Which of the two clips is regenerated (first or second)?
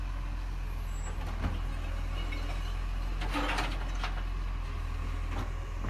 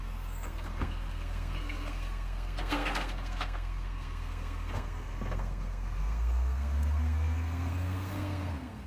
second